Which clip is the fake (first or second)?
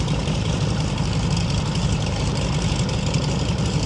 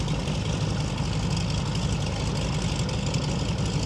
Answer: first